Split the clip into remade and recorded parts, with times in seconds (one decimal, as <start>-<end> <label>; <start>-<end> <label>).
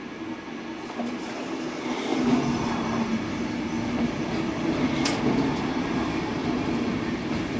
0.0-7.6 recorded